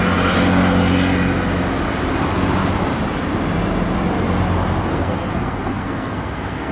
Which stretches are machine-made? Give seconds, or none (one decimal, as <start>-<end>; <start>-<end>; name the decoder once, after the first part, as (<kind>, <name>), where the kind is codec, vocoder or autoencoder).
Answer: 4.9-6.7 (codec, SNAC)